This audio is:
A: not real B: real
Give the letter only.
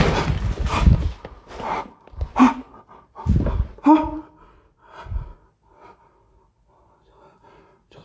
B